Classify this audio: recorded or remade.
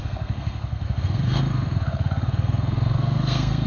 remade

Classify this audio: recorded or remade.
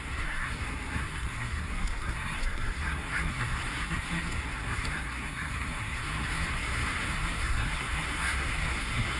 remade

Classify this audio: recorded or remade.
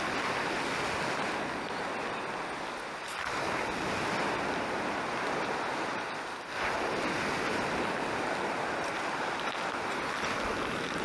recorded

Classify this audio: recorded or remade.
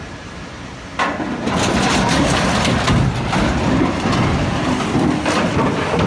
recorded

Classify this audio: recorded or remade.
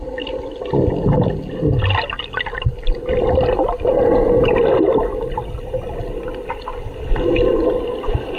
recorded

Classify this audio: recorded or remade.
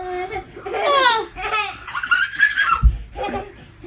recorded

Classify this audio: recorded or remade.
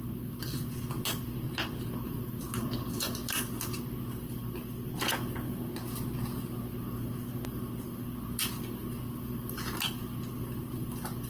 recorded